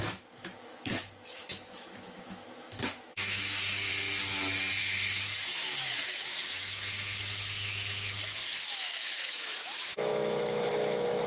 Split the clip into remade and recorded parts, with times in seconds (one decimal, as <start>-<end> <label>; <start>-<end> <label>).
0.0-3.9 remade; 3.9-4.8 recorded; 4.8-11.3 remade